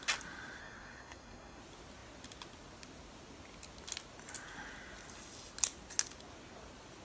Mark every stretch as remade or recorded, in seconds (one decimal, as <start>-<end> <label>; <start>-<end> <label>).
0.0-0.6 recorded; 0.6-1.6 remade; 1.6-7.0 recorded